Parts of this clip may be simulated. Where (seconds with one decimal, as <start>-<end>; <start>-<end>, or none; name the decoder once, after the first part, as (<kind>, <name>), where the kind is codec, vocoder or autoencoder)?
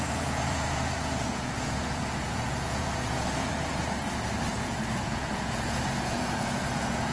0.0-3.5 (vocoder, Vocos); 4.5-7.1